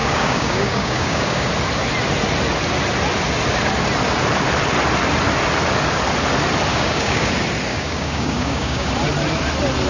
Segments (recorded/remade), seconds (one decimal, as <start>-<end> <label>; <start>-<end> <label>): 0.0-1.5 remade; 1.5-6.7 recorded; 6.7-7.3 remade; 7.3-7.7 recorded; 7.7-8.9 remade; 8.9-9.9 recorded

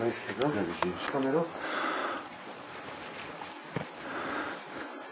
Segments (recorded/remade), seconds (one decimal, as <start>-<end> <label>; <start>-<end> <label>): 0.0-2.0 recorded; 2.0-2.7 remade; 2.7-5.1 recorded